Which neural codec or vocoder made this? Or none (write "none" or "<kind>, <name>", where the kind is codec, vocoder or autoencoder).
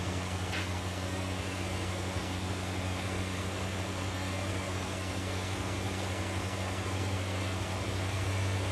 codec, SNAC